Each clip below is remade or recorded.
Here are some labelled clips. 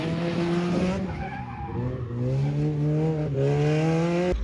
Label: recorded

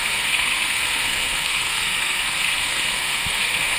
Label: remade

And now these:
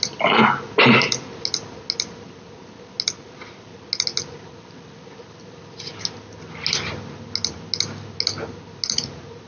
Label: recorded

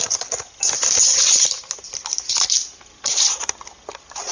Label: recorded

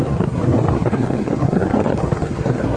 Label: remade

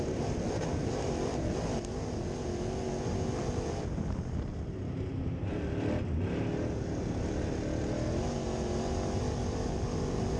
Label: recorded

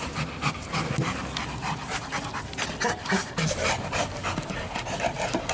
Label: recorded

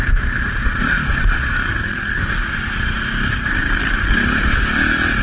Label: recorded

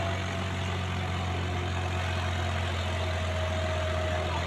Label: recorded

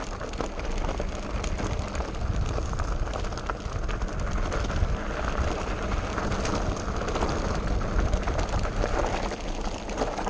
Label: recorded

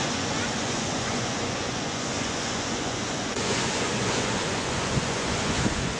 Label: remade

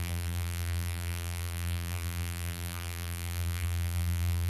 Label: remade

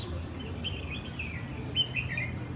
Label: remade